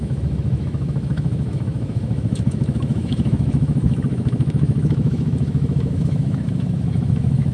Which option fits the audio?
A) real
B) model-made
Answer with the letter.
B